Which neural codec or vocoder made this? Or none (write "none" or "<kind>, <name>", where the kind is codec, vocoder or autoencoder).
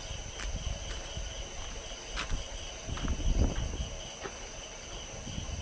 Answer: none